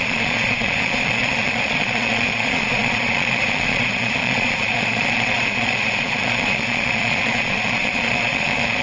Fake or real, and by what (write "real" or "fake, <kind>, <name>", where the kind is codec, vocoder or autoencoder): fake, vocoder, Vocos